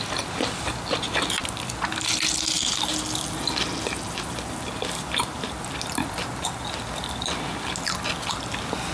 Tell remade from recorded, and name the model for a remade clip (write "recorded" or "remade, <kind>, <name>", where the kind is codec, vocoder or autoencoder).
recorded